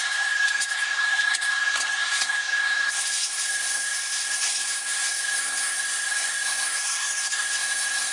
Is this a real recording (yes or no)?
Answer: no